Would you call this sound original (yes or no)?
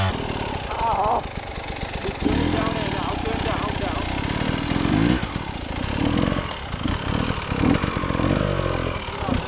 yes